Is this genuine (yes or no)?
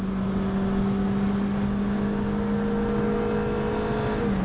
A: yes